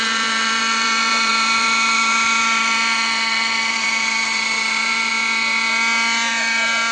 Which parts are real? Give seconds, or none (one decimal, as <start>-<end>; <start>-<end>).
5.1-6.9